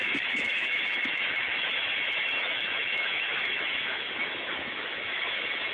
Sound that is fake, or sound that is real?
fake